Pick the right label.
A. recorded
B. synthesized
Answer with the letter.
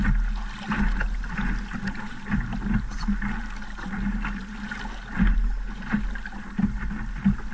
A